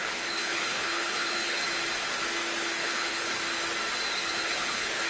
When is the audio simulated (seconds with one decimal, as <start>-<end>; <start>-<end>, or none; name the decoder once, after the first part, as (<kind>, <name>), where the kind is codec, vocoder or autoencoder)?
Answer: 0.0-1.6 (codec, HILCodec); 2.8-3.4; 4.1-5.1